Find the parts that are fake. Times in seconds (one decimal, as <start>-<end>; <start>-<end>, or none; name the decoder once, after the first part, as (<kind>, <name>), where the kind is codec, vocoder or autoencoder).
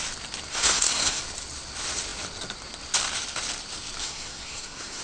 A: 0.5-1.2 (codec, SNAC); 4.0-5.0